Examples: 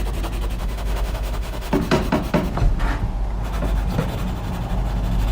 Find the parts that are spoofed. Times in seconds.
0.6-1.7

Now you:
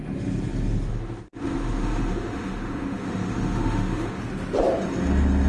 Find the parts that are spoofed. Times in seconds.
0.9-4.2

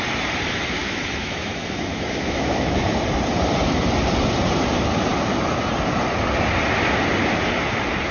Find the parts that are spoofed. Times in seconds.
0.8-2.9

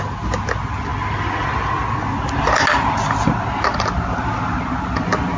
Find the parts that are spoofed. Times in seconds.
none

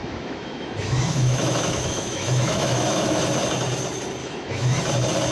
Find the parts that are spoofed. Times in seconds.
0.0-3.2; 4.2-4.8